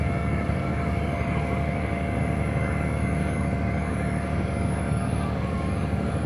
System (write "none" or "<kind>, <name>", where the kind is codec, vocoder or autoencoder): codec, DAC